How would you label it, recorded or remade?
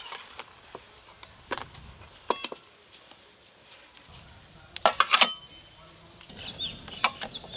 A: recorded